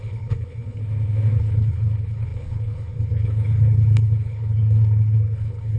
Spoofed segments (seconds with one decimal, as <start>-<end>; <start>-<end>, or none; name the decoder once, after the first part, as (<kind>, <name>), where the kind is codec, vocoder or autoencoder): 0.0-0.8 (codec, HILCodec); 1.4-5.8